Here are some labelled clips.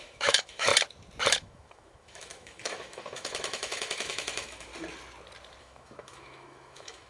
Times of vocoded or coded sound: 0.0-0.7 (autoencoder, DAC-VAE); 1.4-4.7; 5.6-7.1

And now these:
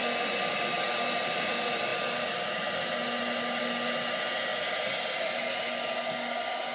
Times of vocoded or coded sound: none